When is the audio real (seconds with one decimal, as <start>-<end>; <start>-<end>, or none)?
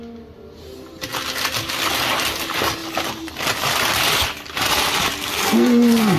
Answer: 0.0-5.3